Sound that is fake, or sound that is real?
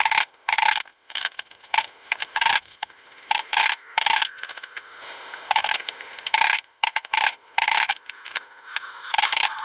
fake